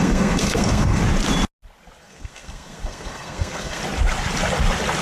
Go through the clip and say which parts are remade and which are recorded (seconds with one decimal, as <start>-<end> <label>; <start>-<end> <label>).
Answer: 0.0-1.0 remade; 1.0-2.0 recorded; 2.0-3.8 remade; 3.8-5.0 recorded